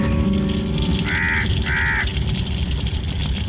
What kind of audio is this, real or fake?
real